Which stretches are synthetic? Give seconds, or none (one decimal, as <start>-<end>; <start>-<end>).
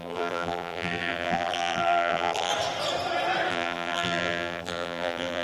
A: 0.0-2.5; 3.5-5.4